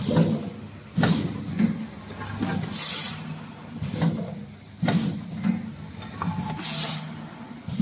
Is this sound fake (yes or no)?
no